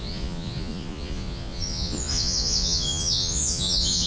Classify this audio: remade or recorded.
remade